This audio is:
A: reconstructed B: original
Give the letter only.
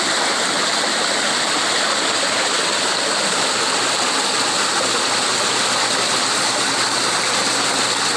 B